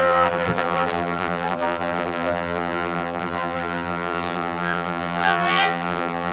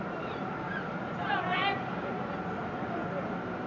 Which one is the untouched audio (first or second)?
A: second